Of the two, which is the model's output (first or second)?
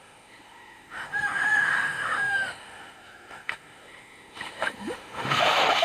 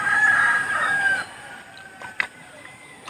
first